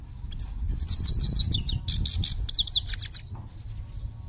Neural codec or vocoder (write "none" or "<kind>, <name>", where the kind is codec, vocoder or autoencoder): none